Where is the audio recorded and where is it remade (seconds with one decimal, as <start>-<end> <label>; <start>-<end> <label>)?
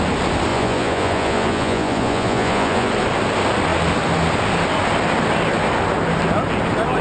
0.0-0.5 recorded; 0.5-2.9 remade; 2.9-7.0 recorded